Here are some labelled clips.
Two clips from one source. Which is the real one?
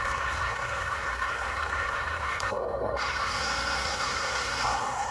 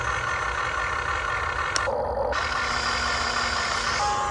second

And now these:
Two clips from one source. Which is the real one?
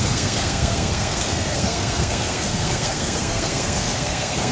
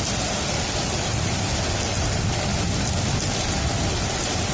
second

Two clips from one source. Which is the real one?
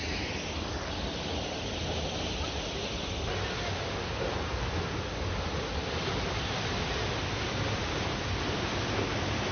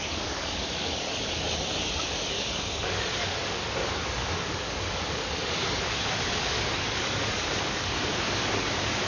first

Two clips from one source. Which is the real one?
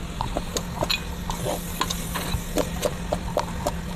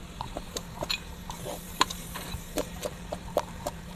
first